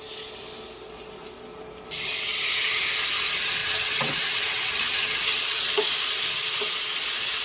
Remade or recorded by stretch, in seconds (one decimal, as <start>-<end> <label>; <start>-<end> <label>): 0.0-3.6 recorded; 3.6-5.6 remade; 5.6-7.4 recorded